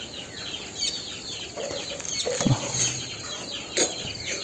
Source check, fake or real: real